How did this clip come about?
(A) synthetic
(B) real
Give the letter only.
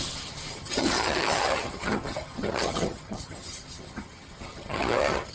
A